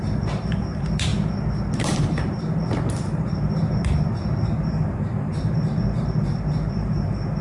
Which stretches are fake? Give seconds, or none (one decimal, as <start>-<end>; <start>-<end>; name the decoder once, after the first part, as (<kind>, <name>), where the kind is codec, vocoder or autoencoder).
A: 0.0-1.1 (vocoder, BigVGAN v2); 1.8-7.4